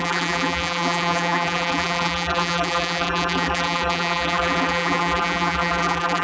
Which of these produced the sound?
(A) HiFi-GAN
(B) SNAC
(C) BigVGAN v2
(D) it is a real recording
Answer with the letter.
C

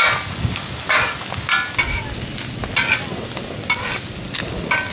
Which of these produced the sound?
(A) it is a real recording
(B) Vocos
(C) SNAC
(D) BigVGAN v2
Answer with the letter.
A